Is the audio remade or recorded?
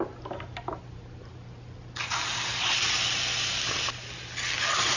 recorded